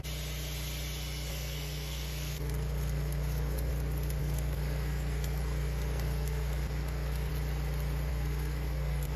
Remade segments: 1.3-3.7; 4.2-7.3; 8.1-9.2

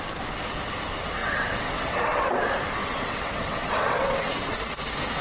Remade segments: 1.2-2.4; 2.8-4.6

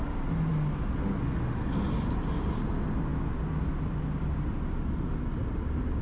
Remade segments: none

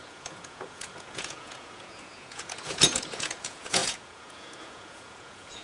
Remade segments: 0.0-5.6

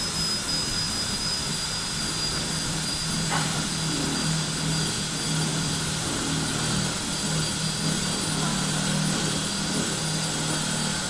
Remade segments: 0.7-4.0; 5.5-6.1

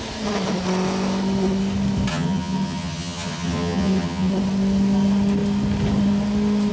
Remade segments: 2.1-4.3

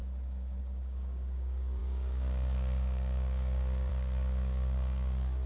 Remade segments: 0.6-5.5